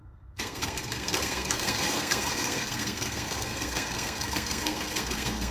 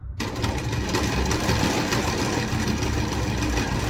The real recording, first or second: second